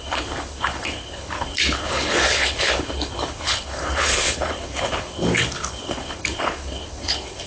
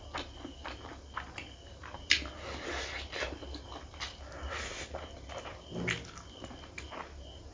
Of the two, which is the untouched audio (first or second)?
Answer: second